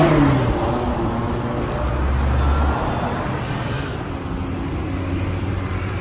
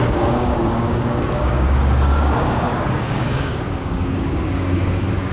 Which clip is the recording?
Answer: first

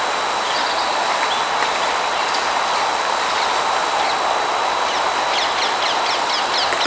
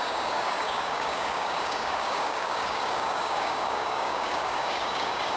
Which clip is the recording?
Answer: first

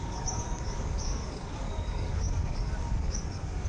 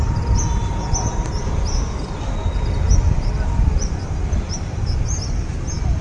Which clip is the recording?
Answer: second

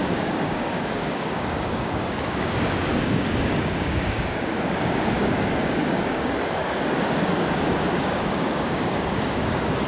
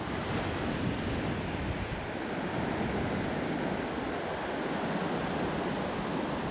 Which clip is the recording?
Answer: second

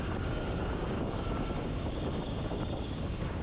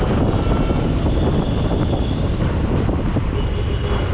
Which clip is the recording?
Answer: second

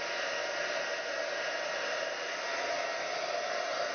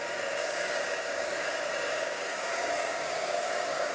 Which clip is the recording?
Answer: first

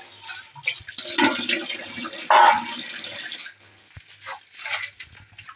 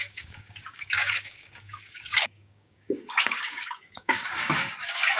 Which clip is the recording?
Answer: first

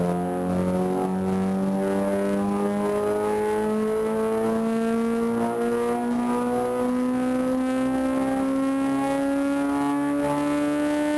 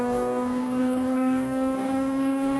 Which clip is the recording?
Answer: first